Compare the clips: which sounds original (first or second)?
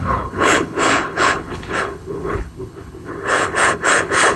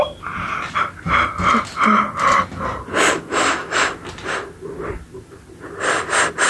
second